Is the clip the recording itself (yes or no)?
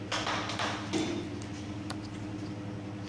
yes